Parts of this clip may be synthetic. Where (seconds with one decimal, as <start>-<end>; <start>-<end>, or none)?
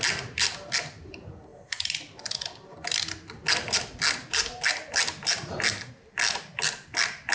none